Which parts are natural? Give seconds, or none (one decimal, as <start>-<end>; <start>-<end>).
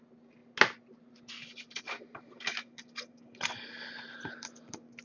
0.0-5.0